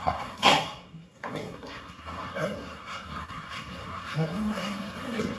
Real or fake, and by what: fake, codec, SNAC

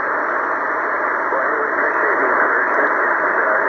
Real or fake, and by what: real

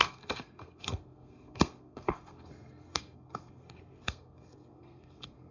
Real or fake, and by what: fake, codec, SNAC